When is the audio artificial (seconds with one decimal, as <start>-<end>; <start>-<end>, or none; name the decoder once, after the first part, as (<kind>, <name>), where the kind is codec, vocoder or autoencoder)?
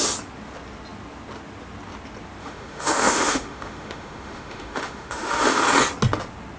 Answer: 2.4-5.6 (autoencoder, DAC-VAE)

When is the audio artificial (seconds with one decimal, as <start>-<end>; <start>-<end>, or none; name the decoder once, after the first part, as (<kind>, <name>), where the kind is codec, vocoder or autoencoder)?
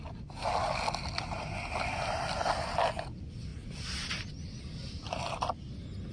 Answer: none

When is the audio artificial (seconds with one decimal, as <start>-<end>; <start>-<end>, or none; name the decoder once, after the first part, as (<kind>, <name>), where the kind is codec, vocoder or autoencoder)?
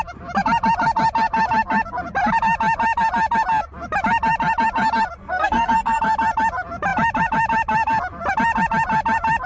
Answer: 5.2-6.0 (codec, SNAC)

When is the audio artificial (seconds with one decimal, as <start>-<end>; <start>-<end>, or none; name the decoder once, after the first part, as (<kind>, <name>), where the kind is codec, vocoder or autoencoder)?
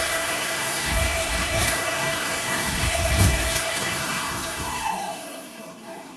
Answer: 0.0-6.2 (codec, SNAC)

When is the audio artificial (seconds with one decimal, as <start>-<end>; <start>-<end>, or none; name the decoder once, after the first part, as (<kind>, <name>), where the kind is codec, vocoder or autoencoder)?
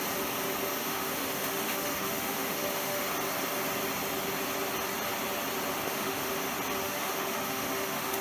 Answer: 0.8-3.1 (autoencoder, DAC-VAE); 5.8-6.3; 6.8-8.2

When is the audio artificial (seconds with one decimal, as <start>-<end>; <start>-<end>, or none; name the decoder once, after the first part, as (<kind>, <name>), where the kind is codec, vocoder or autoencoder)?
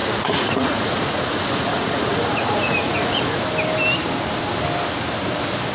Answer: 0.0-3.4 (vocoder, Vocos)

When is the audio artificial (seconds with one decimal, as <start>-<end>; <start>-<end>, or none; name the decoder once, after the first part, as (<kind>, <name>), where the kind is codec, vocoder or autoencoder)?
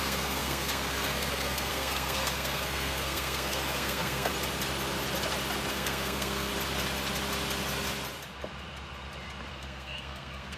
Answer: 0.0-4.3 (codec, SNAC); 5.7-6.5; 9.5-10.6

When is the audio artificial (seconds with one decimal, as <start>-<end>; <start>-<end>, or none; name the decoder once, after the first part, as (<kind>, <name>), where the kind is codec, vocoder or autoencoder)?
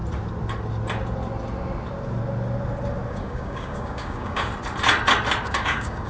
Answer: 3.1-4.5 (codec, DAC); 5.4-6.1